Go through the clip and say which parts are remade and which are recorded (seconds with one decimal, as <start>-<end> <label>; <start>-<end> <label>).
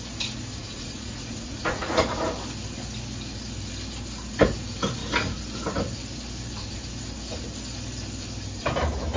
0.0-0.6 recorded; 0.6-2.2 remade; 2.2-9.2 recorded